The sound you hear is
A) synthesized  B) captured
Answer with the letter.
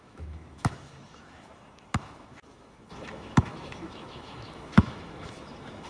A